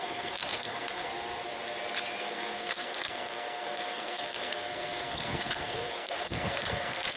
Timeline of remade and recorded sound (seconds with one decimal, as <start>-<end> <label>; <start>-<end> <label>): 0.0-1.1 remade; 1.1-2.2 recorded; 2.2-7.2 remade